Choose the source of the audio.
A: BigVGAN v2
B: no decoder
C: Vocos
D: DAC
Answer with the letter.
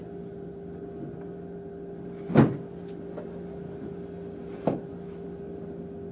B